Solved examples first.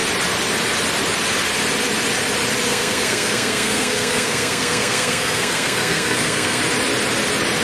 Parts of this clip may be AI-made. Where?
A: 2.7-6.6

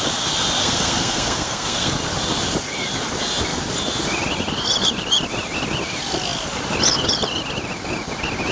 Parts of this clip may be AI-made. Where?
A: 0.6-1.9

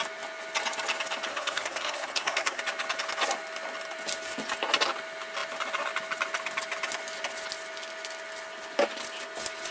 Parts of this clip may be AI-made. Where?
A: 1.3-2.6

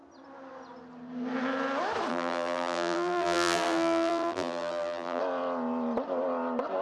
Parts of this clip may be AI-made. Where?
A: 2.1-5.2

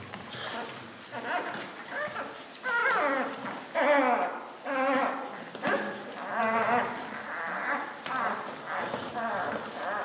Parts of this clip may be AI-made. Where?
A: none

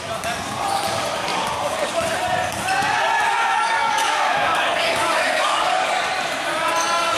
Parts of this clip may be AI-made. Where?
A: 1.3-1.9; 3.3-6.1

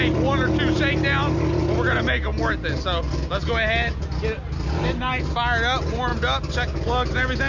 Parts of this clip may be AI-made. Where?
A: none